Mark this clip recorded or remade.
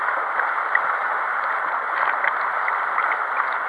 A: recorded